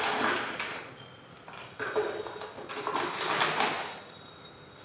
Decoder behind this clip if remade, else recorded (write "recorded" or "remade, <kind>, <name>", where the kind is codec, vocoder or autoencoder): recorded